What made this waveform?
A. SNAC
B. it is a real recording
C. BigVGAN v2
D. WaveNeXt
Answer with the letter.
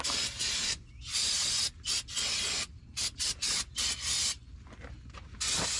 B